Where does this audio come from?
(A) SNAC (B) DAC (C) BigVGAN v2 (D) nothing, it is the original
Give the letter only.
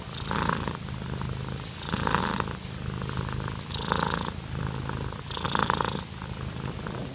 D